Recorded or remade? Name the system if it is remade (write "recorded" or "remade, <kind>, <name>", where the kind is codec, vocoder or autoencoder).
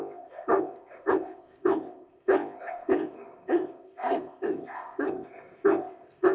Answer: remade, codec, ZipCodec